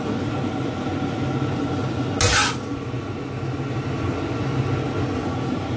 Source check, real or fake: real